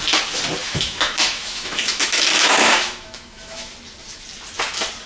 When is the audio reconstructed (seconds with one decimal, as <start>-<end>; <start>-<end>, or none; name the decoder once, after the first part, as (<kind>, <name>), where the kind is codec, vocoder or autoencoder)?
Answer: 0.6-3.7 (autoencoder, DAC-VAE)